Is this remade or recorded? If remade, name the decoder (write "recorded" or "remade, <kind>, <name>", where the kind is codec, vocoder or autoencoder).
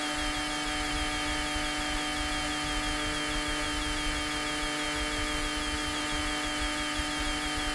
recorded